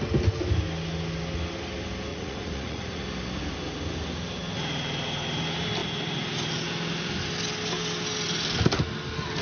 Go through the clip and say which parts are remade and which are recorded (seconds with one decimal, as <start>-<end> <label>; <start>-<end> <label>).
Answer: 0.0-2.1 recorded; 2.1-3.0 remade; 3.0-9.4 recorded

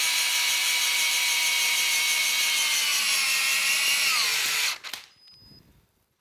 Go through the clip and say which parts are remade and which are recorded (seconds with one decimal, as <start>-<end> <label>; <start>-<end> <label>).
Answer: 0.0-6.2 recorded

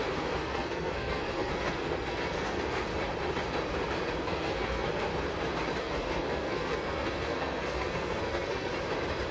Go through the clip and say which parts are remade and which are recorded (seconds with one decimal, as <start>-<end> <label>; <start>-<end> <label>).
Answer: 0.0-2.9 remade; 2.9-4.2 recorded; 4.2-5.1 remade; 5.1-5.8 recorded; 5.8-8.7 remade; 8.7-9.3 recorded

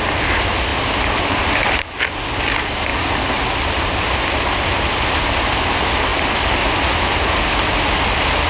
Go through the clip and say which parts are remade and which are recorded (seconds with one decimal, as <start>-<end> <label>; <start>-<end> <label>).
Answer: 0.0-8.5 recorded

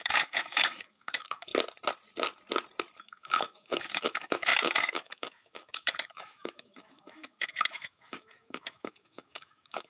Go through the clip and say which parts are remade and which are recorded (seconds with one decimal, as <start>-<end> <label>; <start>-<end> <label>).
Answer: 0.0-1.5 remade; 1.5-3.0 recorded; 3.0-9.9 remade

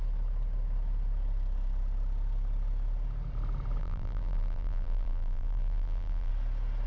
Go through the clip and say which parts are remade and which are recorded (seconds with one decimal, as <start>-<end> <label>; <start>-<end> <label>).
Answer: 0.0-3.8 recorded; 3.8-6.3 remade; 6.3-6.9 recorded

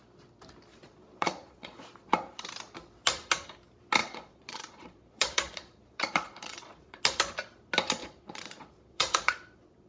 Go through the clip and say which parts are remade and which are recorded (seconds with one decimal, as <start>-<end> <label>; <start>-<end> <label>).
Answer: 0.0-0.7 recorded; 0.7-1.8 remade; 1.8-4.0 recorded; 4.0-7.0 remade; 7.0-8.0 recorded; 8.0-9.9 remade

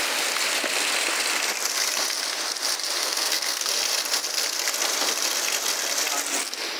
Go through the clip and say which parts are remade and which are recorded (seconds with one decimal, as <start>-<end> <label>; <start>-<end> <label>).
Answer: 0.0-3.0 recorded; 3.0-3.7 remade; 3.7-6.8 recorded